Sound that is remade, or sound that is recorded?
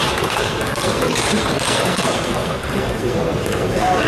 remade